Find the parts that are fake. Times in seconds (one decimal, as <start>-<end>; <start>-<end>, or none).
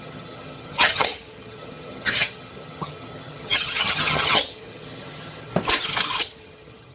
0.0-5.5; 6.2-6.9